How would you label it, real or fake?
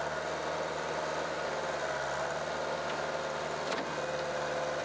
real